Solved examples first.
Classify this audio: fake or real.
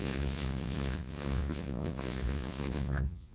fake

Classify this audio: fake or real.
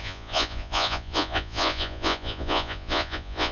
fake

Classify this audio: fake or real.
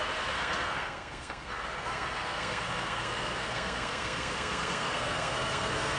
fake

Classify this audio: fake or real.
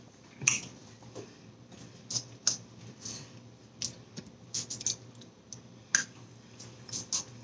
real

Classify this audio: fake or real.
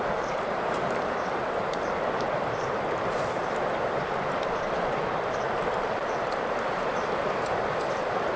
fake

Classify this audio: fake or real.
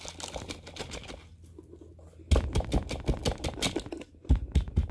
real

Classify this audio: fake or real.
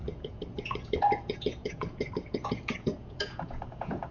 fake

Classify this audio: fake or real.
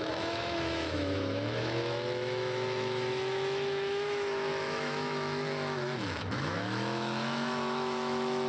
fake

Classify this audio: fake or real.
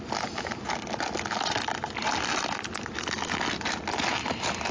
real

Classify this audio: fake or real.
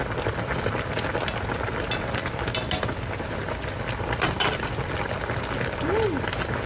real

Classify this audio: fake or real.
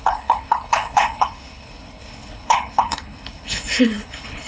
fake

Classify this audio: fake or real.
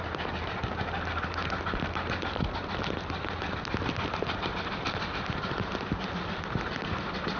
real